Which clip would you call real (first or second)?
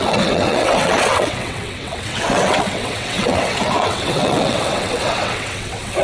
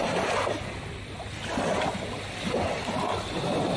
second